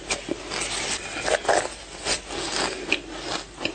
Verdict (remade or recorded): recorded